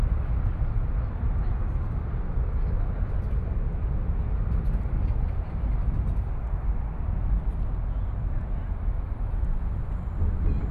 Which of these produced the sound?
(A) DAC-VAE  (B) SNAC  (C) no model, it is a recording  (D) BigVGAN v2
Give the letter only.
C